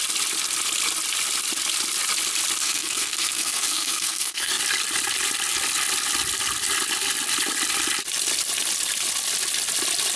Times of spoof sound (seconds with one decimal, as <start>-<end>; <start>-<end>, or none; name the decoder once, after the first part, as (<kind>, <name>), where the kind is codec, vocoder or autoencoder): 2.6-4.6 (codec, SNAC)